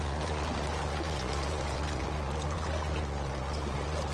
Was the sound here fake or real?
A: fake